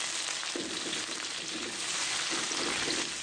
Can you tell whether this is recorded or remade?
recorded